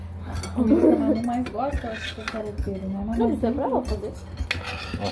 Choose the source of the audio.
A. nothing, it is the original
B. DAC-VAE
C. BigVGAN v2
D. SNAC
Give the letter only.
A